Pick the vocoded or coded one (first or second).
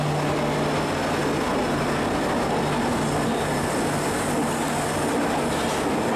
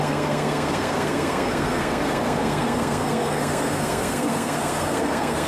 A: second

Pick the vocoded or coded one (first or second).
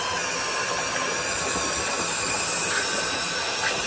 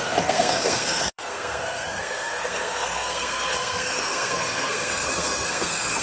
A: second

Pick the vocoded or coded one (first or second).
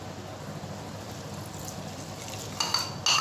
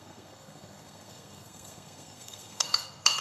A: second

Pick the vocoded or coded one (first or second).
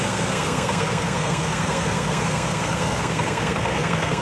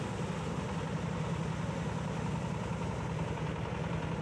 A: first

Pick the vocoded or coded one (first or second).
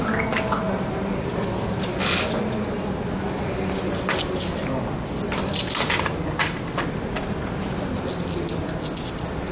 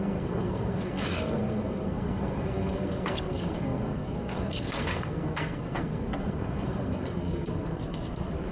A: second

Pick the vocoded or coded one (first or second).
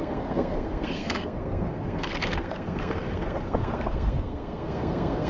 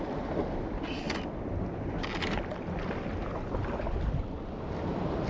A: first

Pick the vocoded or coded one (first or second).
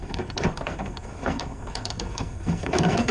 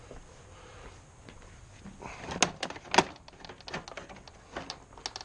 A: first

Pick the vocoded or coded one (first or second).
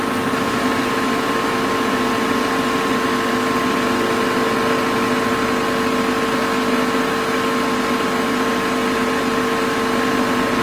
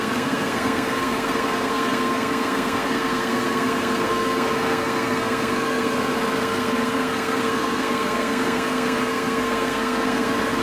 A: second